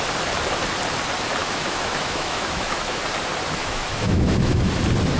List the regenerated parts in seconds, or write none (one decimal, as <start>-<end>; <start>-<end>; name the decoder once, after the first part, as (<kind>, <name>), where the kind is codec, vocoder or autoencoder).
1.4-3.0 (autoencoder, DAC-VAE); 3.6-4.7